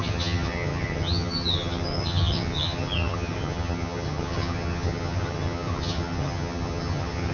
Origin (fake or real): fake